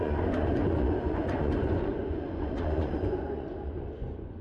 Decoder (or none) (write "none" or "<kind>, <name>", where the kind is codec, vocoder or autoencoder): vocoder, Vocos